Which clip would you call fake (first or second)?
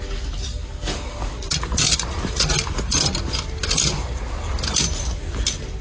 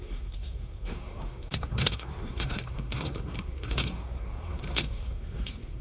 second